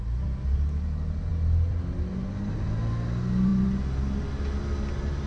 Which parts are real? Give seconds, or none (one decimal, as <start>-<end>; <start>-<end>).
0.0-5.3